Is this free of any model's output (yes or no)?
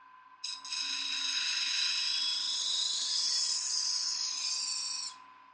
yes